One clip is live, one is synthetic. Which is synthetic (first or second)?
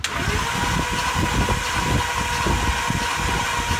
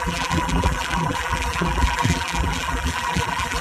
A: second